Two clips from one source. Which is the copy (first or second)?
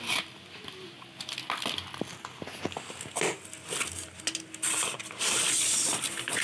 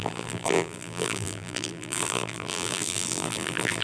second